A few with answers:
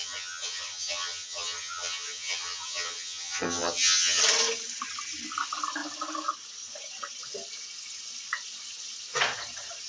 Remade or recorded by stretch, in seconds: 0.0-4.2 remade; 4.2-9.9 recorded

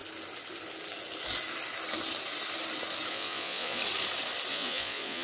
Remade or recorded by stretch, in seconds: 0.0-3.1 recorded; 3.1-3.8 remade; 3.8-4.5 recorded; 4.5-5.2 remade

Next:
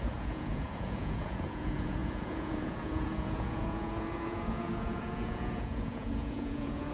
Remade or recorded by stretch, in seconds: 0.0-6.9 remade

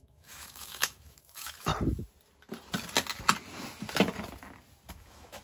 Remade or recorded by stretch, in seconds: 0.0-1.7 remade; 1.7-4.9 recorded; 4.9-5.4 remade